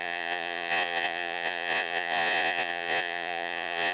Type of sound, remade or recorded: remade